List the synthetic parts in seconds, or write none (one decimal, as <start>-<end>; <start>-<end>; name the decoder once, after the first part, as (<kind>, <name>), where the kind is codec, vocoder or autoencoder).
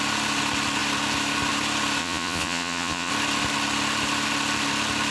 2.0-3.1 (vocoder, Vocos)